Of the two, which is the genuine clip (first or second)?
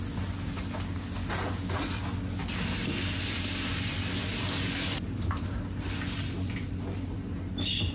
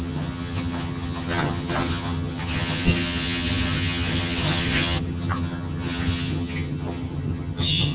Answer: first